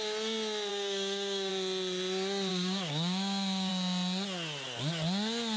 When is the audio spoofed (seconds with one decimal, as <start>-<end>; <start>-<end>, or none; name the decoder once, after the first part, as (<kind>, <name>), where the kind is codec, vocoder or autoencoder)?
0.7-1.5 (codec, DAC); 2.5-3.7